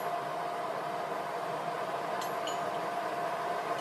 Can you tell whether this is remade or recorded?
recorded